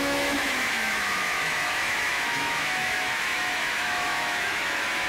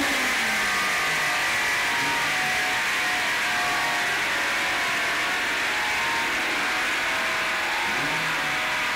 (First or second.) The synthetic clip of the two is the first